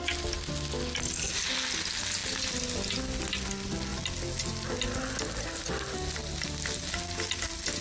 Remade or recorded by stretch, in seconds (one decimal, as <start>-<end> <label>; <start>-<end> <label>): 0.0-7.8 recorded